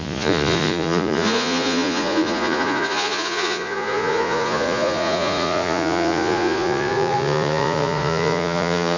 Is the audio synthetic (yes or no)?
yes